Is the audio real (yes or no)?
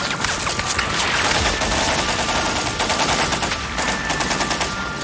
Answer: yes